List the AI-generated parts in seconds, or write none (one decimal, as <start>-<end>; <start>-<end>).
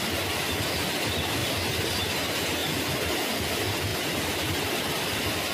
none